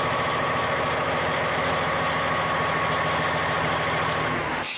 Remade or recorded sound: recorded